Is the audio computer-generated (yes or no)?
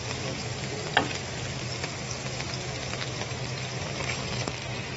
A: no